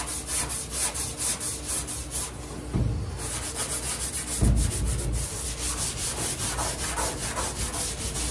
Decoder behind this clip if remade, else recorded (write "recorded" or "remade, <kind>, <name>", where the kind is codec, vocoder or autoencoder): recorded